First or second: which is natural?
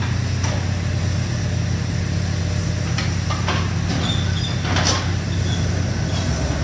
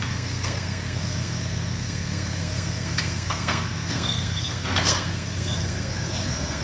first